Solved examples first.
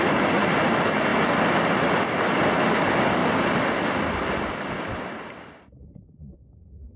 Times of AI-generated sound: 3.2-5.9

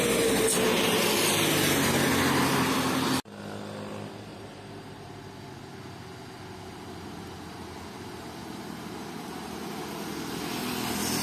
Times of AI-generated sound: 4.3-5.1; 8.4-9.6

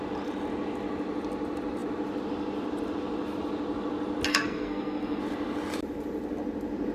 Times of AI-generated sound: 4.3-5.2

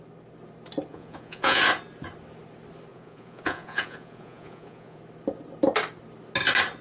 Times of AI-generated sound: 0.9-1.6; 2.9-5.0